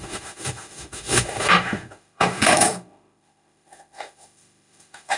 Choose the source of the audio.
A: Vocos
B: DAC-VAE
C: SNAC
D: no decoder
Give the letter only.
B